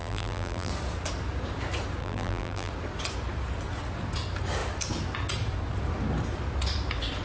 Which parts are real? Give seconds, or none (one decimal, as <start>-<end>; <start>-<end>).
0.7-2.0; 2.7-7.2